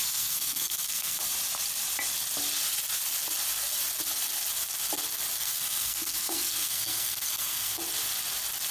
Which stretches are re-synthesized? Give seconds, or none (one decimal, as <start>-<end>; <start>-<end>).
0.0-1.2; 5.4-7.8